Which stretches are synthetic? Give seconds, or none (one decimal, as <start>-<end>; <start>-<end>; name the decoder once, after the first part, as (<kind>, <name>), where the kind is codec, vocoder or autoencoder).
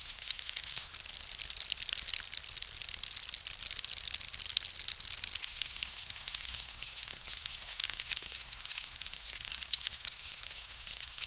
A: 0.0-0.9 (codec, SNAC); 5.4-11.3